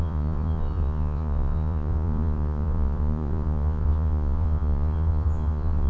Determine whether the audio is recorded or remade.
remade